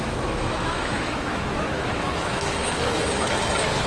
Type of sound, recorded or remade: remade